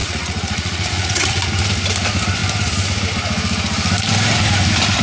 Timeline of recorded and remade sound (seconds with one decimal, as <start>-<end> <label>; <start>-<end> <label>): 0.0-1.2 remade; 1.2-5.0 recorded